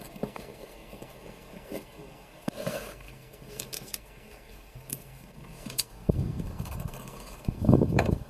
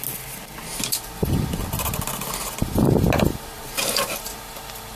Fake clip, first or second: first